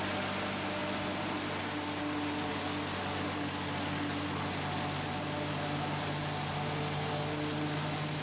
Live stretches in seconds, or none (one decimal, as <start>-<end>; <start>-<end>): 0.0-8.2

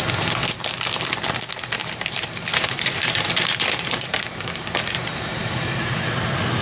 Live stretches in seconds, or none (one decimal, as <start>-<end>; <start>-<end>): 0.0-1.8; 5.8-6.6

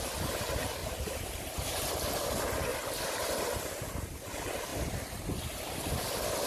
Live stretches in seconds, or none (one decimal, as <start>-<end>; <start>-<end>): 0.0-4.7; 5.4-6.5